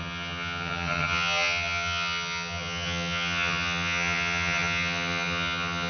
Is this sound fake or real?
fake